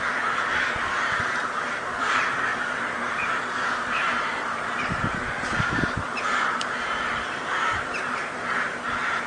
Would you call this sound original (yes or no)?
no